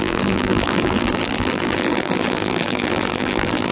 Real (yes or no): no